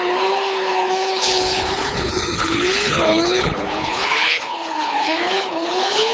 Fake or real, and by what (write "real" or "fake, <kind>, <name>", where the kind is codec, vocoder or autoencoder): fake, codec, HILCodec